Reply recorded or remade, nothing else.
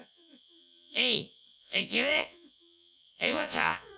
remade